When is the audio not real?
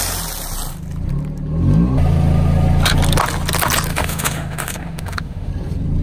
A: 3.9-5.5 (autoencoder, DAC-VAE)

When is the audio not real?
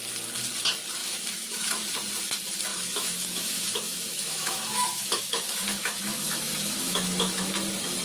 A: 1.0-1.9 (autoencoder, DAC-VAE); 2.7-7.5